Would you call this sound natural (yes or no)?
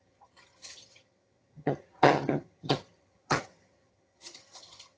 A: no